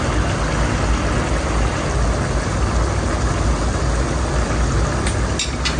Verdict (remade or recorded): recorded